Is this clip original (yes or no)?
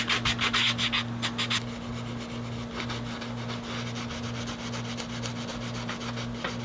yes